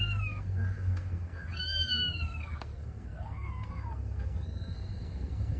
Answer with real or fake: fake